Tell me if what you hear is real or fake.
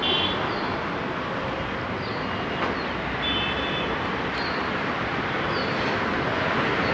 real